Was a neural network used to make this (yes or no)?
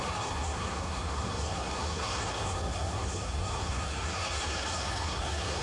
yes